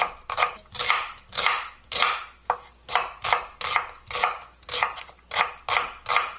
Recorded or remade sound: recorded